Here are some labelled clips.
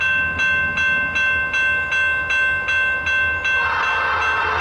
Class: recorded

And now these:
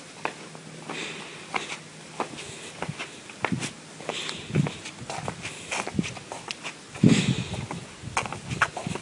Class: recorded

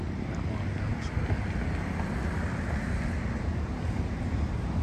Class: recorded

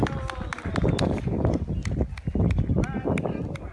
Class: recorded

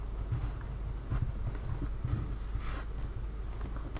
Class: recorded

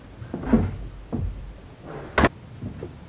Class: recorded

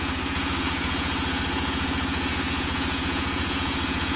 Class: remade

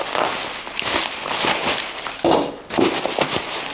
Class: recorded